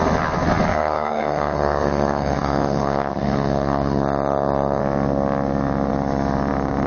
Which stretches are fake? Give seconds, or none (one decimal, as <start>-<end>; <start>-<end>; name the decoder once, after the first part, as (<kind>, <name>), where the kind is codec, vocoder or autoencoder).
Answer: 0.7-4.8 (autoencoder, DAC-VAE)